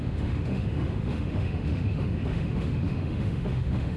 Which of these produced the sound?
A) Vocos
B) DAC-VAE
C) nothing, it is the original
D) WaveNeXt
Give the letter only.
B